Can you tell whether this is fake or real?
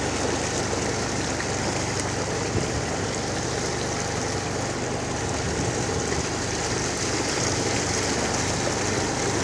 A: real